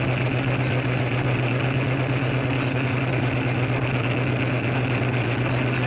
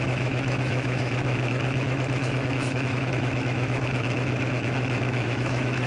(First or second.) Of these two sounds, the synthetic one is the second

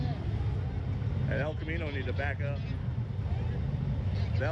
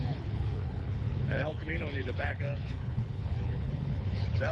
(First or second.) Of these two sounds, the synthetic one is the second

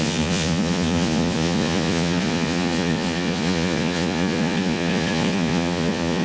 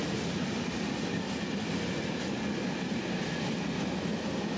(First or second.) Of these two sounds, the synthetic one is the first